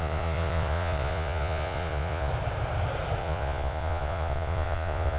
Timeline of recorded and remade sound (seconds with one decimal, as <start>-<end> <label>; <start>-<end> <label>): 0.0-2.3 remade; 2.3-3.2 recorded; 3.2-5.2 remade